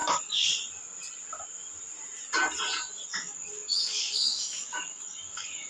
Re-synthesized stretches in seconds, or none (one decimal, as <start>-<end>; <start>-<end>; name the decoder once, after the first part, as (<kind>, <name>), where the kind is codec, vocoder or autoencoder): 0.0-0.5 (codec, DAC); 3.1-5.7